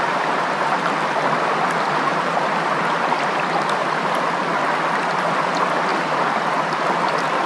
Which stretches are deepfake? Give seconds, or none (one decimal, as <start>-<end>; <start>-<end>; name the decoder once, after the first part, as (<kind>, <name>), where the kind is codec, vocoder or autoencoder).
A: none